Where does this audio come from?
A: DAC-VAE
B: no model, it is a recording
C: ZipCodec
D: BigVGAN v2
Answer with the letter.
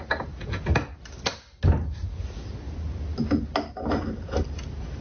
B